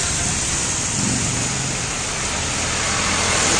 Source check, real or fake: real